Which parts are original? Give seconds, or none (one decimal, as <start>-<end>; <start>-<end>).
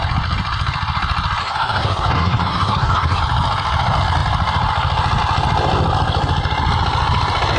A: 0.0-1.4; 3.2-7.6